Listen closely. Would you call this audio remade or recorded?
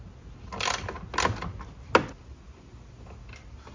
recorded